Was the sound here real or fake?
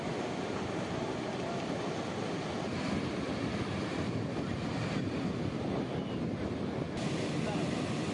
real